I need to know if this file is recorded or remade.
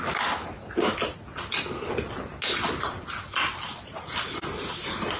recorded